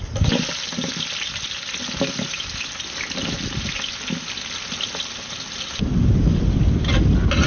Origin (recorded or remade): recorded